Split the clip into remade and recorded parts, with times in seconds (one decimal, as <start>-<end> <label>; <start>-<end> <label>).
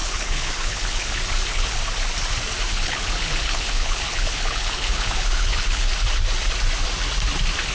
0.0-1.8 remade; 1.8-2.7 recorded; 2.7-5.9 remade; 5.9-7.7 recorded